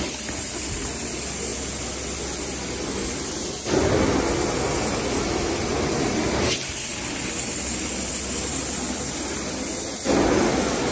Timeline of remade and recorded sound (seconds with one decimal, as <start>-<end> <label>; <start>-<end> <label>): 0.0-5.7 recorded; 5.7-6.5 remade; 6.5-10.9 recorded